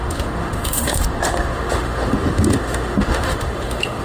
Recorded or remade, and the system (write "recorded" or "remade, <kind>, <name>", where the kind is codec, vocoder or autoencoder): remade, autoencoder, DAC-VAE